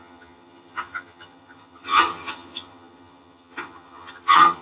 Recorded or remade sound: remade